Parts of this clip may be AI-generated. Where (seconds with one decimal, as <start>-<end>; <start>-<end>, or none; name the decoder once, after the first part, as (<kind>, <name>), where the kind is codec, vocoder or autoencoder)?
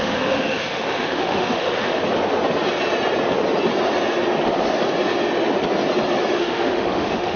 0.0-2.0 (autoencoder, DAC-VAE); 6.4-7.4